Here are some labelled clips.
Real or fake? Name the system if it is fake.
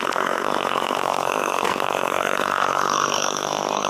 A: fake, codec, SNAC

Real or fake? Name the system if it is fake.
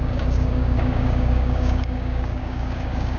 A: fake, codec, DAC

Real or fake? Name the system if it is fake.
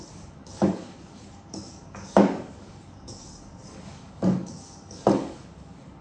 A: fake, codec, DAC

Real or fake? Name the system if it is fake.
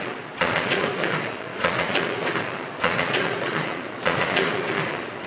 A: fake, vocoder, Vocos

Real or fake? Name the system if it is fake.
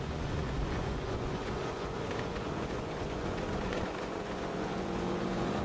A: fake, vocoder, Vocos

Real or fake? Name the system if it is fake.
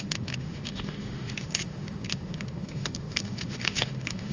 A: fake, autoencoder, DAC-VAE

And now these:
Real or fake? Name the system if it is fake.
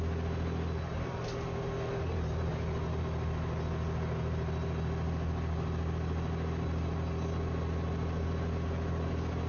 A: real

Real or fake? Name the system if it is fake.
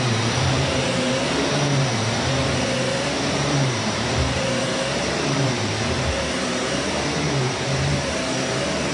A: fake, vocoder, BigVGAN v2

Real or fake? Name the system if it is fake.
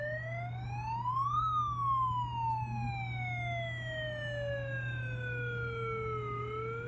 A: real